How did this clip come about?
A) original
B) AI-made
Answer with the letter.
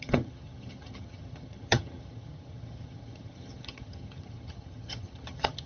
B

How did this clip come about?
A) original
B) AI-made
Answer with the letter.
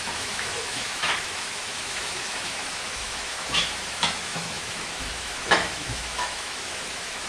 B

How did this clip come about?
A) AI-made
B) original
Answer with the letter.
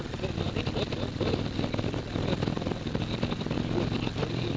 A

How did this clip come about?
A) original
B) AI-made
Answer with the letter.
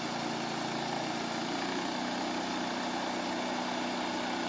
A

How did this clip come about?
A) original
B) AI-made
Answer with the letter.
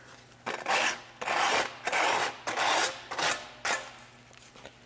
A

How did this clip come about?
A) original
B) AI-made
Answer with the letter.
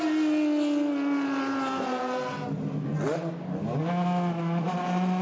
A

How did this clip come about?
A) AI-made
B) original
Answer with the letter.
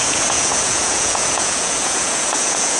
A